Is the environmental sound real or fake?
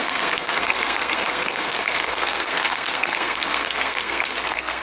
fake